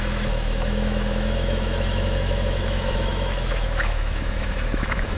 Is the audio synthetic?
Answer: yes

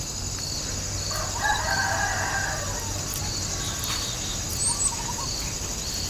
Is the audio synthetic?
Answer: no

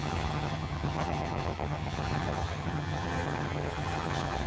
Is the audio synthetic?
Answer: yes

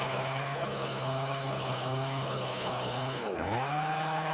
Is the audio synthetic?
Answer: yes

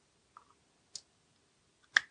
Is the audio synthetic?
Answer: no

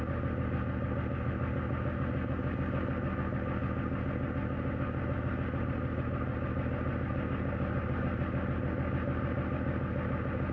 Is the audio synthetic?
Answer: no